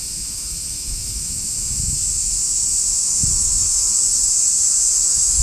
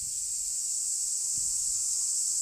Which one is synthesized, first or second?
first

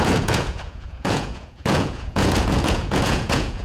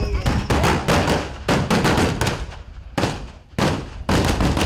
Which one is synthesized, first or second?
first